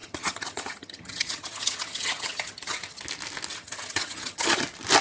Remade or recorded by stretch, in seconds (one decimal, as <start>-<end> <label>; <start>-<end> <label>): 0.0-3.0 remade; 3.0-3.5 recorded; 3.5-4.6 remade; 4.6-5.0 recorded